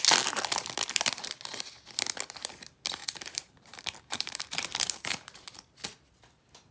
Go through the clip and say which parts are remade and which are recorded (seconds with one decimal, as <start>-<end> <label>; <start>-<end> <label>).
0.0-3.0 recorded; 3.0-5.5 remade; 5.5-6.7 recorded